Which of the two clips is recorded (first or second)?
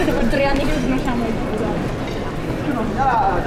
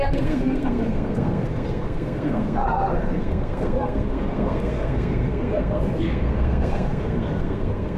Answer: first